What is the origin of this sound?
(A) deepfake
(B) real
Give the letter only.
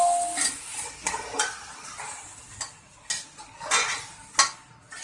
B